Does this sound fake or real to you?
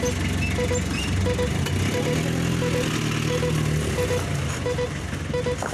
real